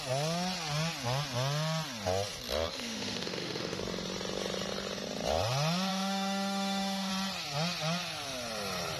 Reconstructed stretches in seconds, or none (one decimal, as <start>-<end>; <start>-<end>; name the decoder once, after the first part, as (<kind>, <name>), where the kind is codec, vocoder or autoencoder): 2.7-3.8 (autoencoder, DAC-VAE); 5.9-7.1